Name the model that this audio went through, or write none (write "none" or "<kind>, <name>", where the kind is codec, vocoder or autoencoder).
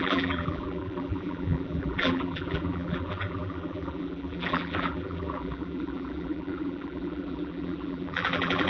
vocoder, BigVGAN v2